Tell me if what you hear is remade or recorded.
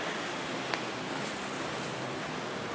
recorded